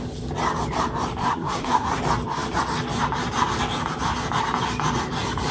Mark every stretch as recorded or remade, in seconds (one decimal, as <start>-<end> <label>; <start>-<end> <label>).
0.0-1.2 recorded; 1.2-2.0 remade; 2.0-5.5 recorded